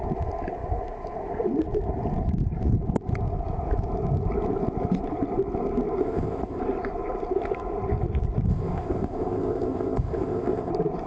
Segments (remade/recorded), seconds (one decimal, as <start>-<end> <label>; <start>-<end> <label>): 0.0-6.0 recorded; 6.0-6.6 remade; 6.6-8.5 recorded; 8.5-10.7 remade; 10.7-11.1 recorded